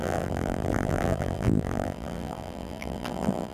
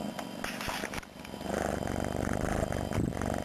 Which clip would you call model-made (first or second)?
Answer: first